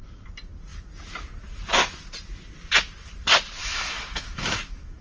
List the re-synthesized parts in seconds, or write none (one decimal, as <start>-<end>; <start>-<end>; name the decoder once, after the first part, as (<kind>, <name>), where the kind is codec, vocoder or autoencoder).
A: 3.6-5.0 (autoencoder, DAC-VAE)